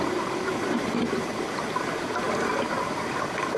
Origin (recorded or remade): recorded